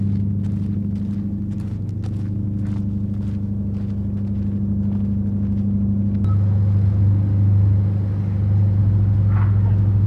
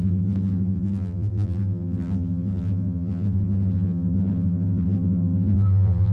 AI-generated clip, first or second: second